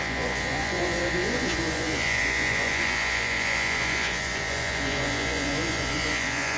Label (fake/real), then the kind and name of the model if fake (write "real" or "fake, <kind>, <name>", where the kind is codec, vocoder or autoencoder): fake, vocoder, Vocos